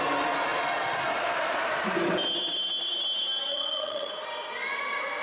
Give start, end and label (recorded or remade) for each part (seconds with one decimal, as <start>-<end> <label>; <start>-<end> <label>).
0.0-3.5 recorded; 3.5-4.1 remade; 4.1-5.2 recorded